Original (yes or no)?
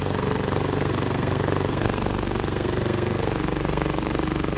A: no